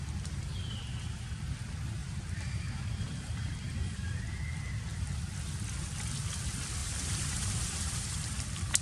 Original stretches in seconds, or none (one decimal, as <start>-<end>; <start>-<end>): 0.0-2.0; 4.2-6.8; 8.3-8.8